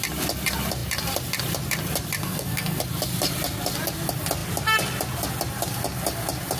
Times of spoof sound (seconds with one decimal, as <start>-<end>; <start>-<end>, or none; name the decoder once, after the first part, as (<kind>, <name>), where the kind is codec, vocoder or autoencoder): 2.2-2.8 (codec, SNAC)